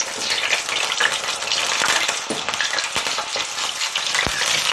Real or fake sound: real